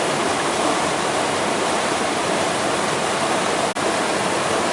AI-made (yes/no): no